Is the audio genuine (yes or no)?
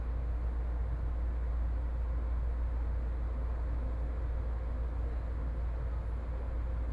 yes